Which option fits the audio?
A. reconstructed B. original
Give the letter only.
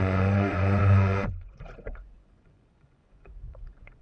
A